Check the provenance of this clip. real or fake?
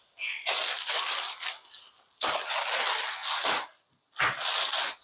real